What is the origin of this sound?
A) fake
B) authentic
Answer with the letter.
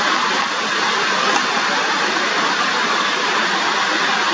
B